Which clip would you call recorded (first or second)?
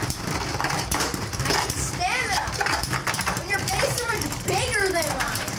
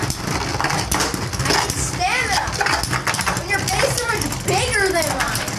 second